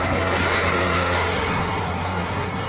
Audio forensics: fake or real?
fake